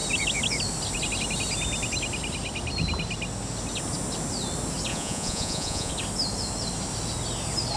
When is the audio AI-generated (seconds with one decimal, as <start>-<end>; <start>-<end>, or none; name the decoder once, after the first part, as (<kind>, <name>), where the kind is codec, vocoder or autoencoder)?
4.9-5.9 (vocoder, Vocos)